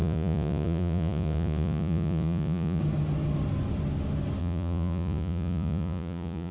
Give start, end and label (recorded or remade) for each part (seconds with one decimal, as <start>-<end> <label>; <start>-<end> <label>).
0.0-2.8 remade; 2.8-4.4 recorded; 4.4-6.5 remade

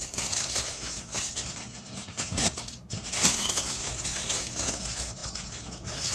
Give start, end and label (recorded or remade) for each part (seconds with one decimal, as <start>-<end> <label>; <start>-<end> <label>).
0.0-6.1 remade

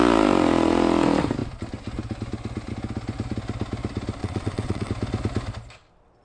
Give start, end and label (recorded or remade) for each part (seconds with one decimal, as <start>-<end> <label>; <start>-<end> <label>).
0.0-4.2 recorded; 4.2-4.9 remade; 4.9-6.2 recorded

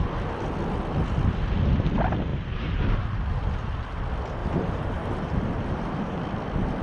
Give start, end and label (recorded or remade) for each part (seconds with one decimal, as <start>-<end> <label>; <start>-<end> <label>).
0.0-2.3 recorded; 2.3-4.0 remade; 4.0-4.4 recorded; 4.4-6.2 remade; 6.2-6.8 recorded

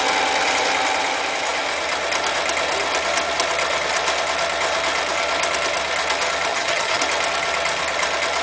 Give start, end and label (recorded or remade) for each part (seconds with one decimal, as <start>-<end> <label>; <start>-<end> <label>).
0.0-6.5 recorded; 6.5-7.0 remade; 7.0-8.4 recorded

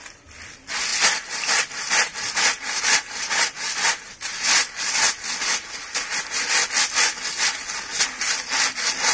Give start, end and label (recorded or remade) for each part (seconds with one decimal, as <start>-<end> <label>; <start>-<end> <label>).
0.0-9.1 recorded

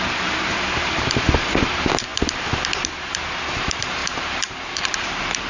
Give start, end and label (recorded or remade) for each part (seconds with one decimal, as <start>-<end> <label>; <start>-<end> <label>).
0.0-2.1 remade; 2.1-3.0 recorded; 3.0-5.5 remade

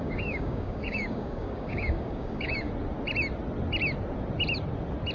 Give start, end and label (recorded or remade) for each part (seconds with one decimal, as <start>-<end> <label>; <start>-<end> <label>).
0.0-2.7 remade; 2.7-5.1 recorded